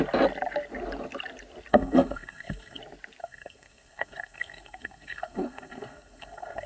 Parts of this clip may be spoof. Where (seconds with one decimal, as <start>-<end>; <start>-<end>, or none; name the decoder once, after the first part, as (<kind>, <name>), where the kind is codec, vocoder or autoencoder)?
1.7-2.8 (codec, SNAC); 3.2-6.7